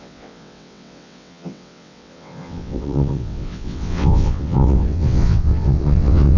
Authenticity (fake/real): fake